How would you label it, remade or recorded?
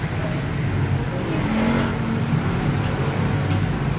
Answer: recorded